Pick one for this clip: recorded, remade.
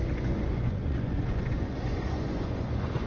remade